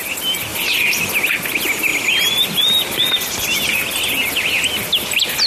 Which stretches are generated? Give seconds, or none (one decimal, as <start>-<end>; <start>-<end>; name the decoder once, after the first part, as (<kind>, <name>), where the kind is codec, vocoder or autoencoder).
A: none